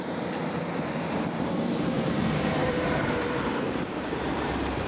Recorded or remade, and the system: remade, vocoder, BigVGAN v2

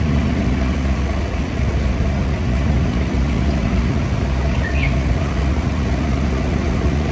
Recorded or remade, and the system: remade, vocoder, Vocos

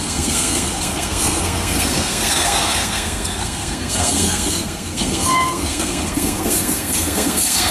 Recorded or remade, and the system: remade, codec, SNAC